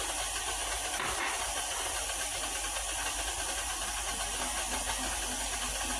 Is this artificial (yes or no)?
no